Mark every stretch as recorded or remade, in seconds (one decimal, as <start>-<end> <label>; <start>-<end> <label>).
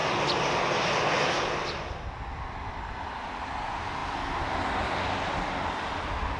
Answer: 0.0-6.4 recorded